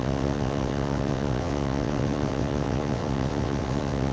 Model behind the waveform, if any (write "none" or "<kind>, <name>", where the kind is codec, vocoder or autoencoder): vocoder, WaveNeXt